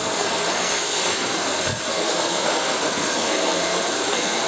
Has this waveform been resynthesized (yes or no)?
yes